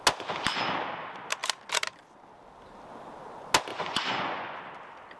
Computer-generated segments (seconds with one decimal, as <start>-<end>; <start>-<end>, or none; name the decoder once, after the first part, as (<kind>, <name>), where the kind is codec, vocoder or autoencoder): 3.7-4.6 (vocoder, Vocos)